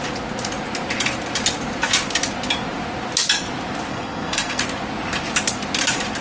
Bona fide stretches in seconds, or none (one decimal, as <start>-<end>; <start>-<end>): 0.0-3.9; 4.6-6.2